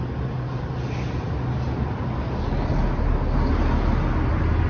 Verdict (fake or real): real